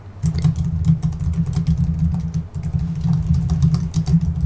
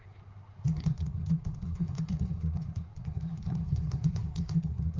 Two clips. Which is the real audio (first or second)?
first